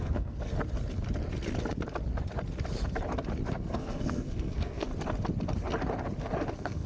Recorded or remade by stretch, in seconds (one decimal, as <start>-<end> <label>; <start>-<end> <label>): 0.0-0.5 remade; 0.5-3.5 recorded; 3.5-4.9 remade; 4.9-6.5 recorded; 6.5-6.9 remade